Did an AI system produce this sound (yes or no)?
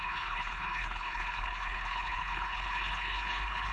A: yes